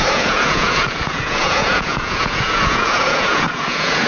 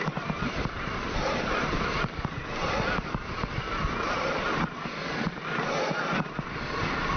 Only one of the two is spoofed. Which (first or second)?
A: first